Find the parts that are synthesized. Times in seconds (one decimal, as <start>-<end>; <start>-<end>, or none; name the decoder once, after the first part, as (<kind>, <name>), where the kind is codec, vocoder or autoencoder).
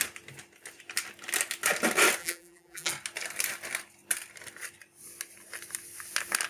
2.2-2.9 (vocoder, BigVGAN v2)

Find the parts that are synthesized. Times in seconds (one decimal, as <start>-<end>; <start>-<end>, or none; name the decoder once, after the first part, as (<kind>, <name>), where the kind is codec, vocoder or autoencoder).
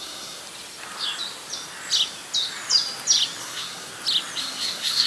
0.0-0.4 (codec, SNAC); 3.4-3.9; 4.4-5.1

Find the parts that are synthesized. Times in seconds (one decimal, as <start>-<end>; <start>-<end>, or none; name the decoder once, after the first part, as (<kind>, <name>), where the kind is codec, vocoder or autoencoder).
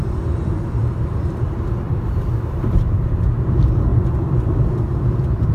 none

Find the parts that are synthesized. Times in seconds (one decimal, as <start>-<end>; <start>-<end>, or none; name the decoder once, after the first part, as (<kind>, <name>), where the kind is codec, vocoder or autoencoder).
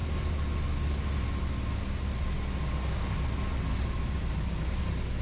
3.7-4.8 (vocoder, BigVGAN v2)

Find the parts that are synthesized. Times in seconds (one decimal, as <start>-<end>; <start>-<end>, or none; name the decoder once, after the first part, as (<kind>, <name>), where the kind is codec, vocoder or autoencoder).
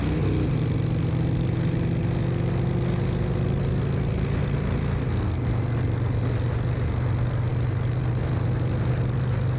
none